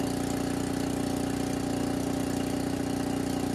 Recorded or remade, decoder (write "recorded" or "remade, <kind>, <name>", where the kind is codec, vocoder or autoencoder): recorded